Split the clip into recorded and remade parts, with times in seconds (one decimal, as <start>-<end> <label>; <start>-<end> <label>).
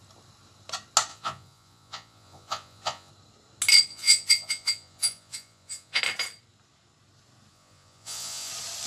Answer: 0.0-1.1 recorded; 1.1-3.1 remade; 3.1-3.9 recorded; 3.9-6.0 remade; 6.0-7.5 recorded; 7.5-8.5 remade; 8.5-8.9 recorded